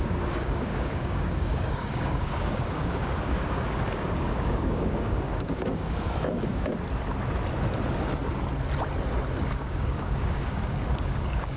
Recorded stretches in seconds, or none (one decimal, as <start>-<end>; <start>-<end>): 6.7-9.5